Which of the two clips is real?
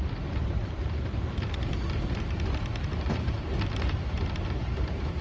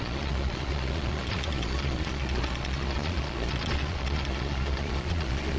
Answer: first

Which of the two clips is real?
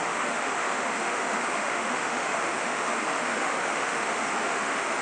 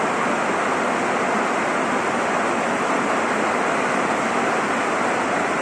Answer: second